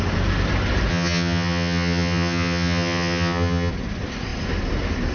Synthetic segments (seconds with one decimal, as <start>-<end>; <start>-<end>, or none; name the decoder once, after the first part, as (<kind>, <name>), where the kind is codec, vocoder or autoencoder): 0.9-3.7 (vocoder, HiFi-GAN)